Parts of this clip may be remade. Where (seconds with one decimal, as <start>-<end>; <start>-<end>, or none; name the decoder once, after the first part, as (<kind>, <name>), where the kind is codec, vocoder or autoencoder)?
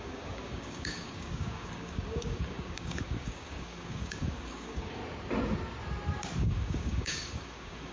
0.0-5.0 (codec, DAC); 6.4-7.9